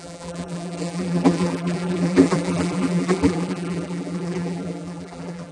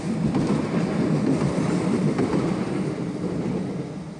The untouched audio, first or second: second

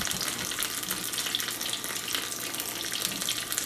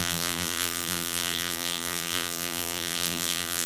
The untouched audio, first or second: first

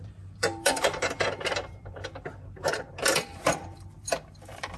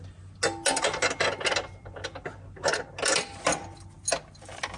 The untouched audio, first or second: second